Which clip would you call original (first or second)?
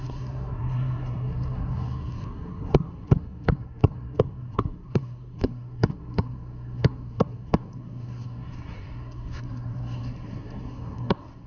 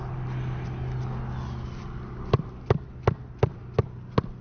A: second